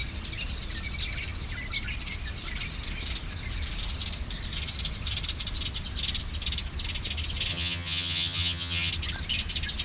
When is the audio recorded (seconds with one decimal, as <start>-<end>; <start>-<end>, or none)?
0.0-7.5; 8.9-9.8